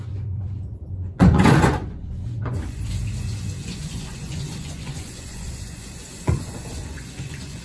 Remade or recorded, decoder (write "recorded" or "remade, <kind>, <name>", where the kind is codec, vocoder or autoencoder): remade, vocoder, Vocos